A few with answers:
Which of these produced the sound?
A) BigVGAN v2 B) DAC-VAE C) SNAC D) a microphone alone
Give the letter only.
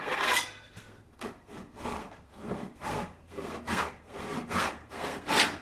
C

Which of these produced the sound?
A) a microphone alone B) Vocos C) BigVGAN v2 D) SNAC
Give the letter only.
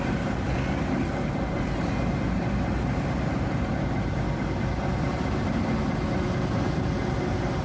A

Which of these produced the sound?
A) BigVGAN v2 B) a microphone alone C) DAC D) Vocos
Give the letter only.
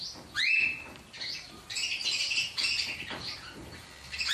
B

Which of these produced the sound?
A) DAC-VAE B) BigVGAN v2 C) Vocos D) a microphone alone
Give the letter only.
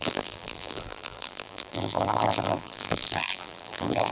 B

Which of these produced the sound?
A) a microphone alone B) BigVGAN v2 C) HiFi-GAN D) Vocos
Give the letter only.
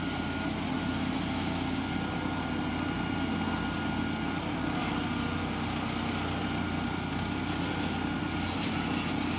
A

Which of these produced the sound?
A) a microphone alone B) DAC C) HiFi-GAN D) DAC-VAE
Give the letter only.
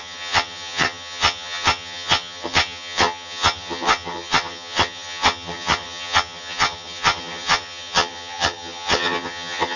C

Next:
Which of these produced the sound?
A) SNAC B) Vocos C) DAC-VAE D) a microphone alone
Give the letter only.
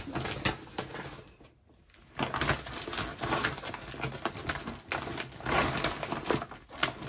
D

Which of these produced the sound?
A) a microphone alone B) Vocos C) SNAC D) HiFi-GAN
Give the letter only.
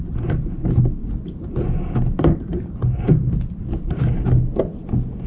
A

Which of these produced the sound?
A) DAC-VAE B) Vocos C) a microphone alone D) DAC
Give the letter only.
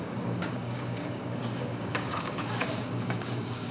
D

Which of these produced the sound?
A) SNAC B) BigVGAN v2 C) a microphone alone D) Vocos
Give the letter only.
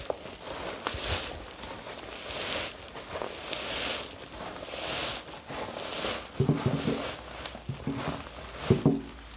C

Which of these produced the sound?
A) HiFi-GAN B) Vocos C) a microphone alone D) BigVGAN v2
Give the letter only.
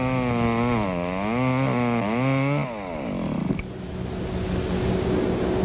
C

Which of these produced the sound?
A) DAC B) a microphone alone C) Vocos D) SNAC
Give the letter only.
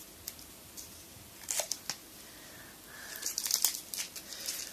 B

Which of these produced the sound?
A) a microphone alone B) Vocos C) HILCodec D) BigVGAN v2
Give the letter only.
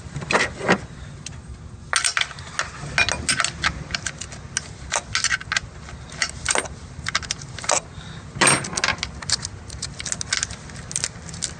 A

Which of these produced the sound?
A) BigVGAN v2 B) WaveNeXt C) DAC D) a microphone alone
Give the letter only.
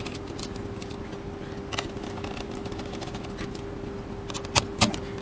D